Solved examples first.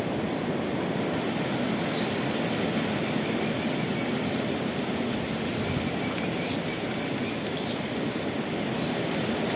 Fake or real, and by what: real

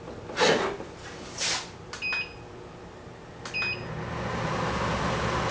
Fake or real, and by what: real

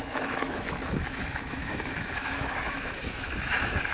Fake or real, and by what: fake, autoencoder, DAC-VAE